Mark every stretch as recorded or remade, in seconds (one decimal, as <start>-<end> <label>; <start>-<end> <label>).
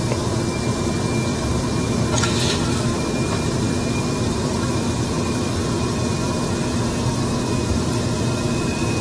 0.0-1.3 recorded; 1.3-2.0 remade; 2.0-2.9 recorded; 2.9-6.3 remade; 6.3-9.0 recorded